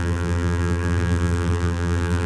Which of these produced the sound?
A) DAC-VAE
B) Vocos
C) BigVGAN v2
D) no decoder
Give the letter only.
C